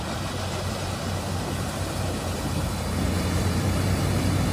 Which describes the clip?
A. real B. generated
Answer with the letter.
A